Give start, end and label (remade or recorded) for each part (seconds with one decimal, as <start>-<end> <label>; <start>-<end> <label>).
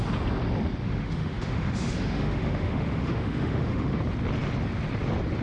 0.0-0.8 recorded; 0.8-4.0 remade; 4.0-5.4 recorded